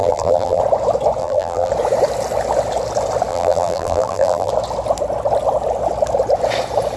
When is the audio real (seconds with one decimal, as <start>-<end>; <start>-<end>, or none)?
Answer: 0.6-1.2; 1.7-3.3; 4.5-7.0